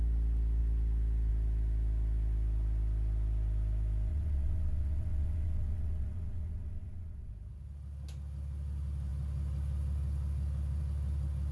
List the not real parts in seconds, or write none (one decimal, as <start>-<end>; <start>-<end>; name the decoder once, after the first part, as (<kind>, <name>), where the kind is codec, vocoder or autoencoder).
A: 4.1-7.3 (vocoder, WaveNeXt)